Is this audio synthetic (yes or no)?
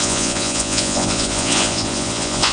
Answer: yes